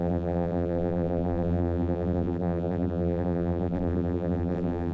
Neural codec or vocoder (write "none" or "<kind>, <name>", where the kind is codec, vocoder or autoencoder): vocoder, BigVGAN v2